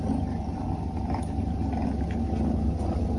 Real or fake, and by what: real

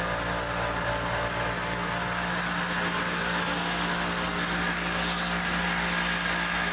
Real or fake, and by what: real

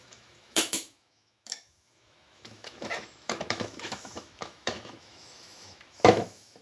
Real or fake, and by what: fake, autoencoder, DAC-VAE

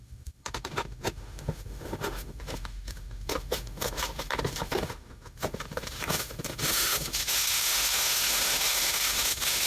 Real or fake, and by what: fake, autoencoder, DAC-VAE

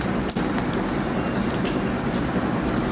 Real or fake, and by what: real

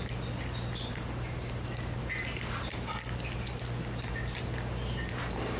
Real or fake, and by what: real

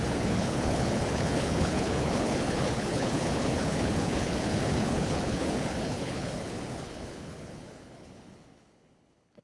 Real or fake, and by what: fake, codec, HILCodec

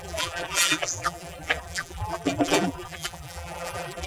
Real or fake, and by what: fake, vocoder, BigVGAN v2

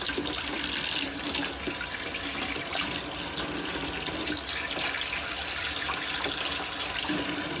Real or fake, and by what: real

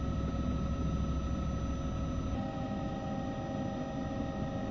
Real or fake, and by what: real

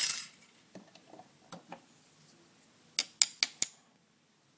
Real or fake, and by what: real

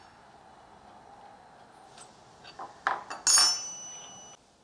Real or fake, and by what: real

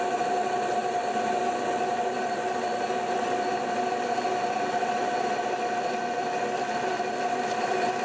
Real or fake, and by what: real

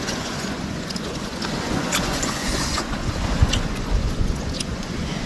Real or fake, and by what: fake, vocoder, Vocos